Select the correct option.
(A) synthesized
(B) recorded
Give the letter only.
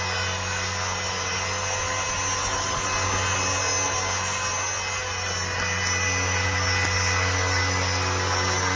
B